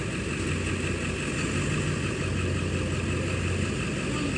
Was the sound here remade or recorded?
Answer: remade